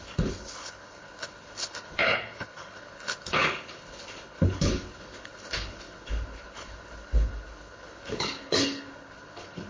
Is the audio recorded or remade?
remade